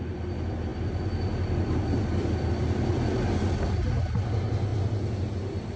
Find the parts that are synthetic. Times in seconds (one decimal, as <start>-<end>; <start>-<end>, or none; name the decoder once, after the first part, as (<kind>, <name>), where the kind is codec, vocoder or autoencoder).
none